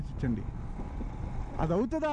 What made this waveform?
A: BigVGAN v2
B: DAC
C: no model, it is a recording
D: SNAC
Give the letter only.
C